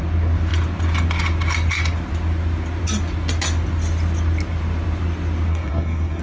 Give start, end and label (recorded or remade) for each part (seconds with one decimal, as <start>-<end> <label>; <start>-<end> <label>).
0.0-5.5 recorded; 5.5-6.2 remade